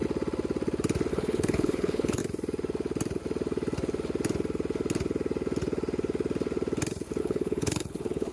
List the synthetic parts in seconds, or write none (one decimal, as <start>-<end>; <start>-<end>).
1.1-2.2; 7.2-8.3